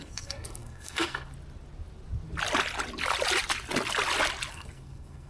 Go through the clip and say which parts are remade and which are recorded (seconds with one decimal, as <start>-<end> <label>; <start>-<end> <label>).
0.0-1.3 remade; 1.3-4.5 recorded; 4.5-5.3 remade